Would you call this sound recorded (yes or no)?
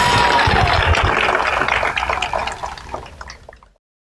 yes